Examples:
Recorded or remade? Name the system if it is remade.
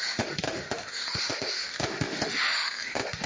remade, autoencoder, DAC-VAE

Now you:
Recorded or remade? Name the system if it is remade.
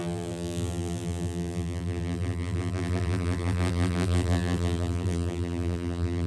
remade, vocoder, BigVGAN v2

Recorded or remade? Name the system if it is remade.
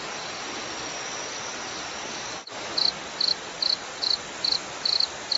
recorded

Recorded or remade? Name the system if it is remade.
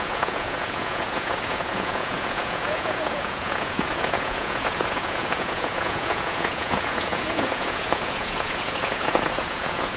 remade, vocoder, Vocos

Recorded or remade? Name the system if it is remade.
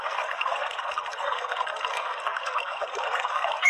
remade, codec, SNAC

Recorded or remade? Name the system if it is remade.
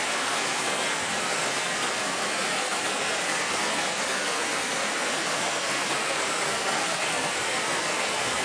remade, codec, SNAC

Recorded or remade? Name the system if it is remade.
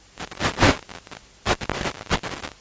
recorded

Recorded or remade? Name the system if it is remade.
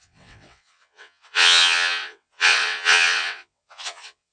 remade, vocoder, WaveNeXt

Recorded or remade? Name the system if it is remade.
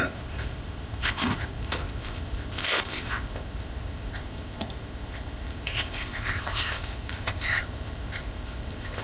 remade, codec, ZipCodec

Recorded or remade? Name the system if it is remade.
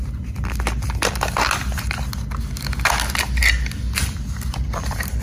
recorded